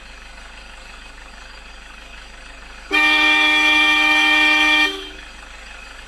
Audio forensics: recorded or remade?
remade